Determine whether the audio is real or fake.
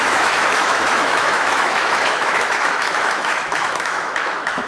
fake